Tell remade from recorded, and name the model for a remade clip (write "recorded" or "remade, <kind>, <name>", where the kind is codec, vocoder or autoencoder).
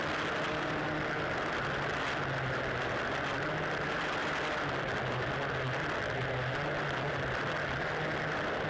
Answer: recorded